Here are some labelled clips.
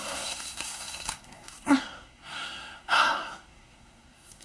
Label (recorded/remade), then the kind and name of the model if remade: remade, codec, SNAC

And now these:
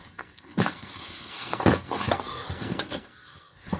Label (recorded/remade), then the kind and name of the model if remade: remade, codec, SNAC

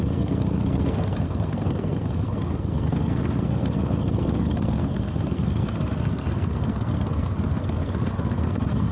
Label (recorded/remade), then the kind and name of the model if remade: remade, codec, SNAC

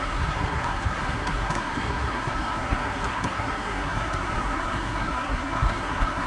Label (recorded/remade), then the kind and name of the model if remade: remade, codec, SNAC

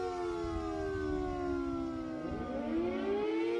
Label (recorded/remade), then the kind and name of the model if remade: recorded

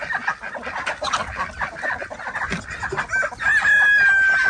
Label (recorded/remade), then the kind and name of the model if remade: recorded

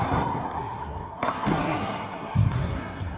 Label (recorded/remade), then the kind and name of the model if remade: remade, codec, SNAC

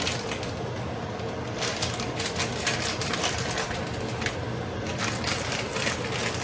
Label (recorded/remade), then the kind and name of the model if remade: recorded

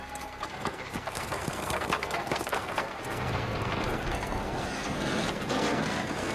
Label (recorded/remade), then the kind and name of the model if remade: remade, codec, SNAC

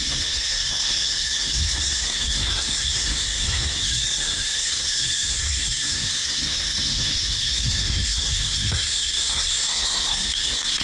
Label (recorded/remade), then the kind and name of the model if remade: remade, codec, SNAC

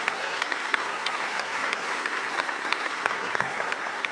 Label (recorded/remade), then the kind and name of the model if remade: remade, codec, SNAC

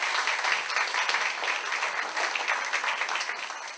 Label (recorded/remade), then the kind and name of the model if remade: recorded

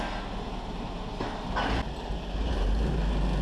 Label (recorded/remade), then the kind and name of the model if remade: recorded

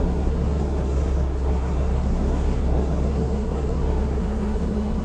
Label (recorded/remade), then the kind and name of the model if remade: remade, codec, SNAC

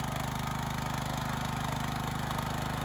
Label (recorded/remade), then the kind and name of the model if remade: recorded